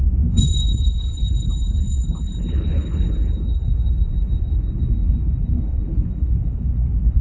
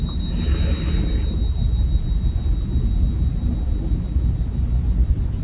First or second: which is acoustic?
second